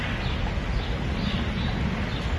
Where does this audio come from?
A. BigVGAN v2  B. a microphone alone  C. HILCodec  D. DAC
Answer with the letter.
B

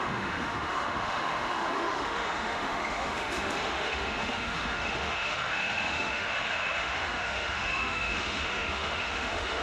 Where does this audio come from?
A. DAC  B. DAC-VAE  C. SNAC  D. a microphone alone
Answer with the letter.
B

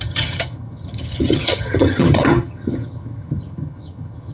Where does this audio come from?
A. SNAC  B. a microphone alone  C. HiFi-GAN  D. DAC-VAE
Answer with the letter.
C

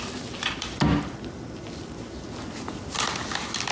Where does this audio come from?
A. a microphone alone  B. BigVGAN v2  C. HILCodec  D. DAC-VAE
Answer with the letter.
A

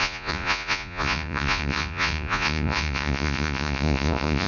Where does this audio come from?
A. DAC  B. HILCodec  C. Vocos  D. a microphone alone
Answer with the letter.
C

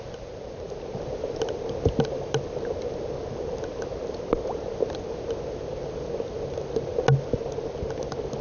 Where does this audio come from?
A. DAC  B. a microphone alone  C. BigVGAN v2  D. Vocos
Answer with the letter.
B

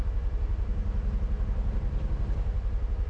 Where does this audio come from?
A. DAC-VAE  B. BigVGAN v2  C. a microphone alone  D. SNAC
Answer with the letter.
C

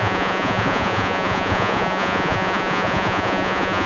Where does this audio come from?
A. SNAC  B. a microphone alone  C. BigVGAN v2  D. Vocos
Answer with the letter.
D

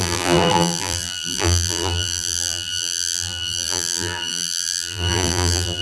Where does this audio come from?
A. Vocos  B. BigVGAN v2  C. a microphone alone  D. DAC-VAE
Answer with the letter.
B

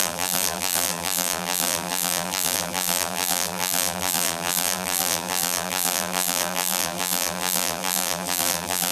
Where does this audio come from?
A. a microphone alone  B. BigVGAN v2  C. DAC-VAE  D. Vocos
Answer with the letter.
B